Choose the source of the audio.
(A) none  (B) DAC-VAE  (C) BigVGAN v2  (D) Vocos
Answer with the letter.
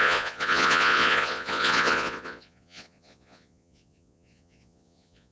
D